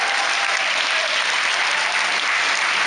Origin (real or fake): real